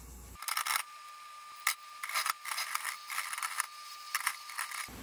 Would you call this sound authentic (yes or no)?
yes